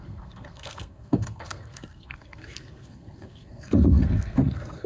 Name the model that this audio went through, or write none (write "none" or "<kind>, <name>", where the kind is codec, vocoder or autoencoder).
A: codec, SNAC